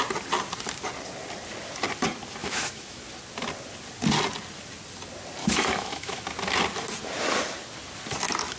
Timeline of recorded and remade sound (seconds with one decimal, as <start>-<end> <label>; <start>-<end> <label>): 0.0-2.4 recorded; 2.4-3.0 remade; 3.0-5.4 recorded; 5.4-6.2 remade; 6.2-8.6 recorded